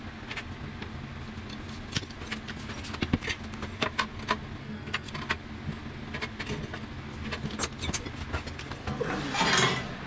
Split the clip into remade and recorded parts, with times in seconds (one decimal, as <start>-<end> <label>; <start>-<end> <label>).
0.0-4.6 recorded; 4.6-5.1 remade; 5.1-10.1 recorded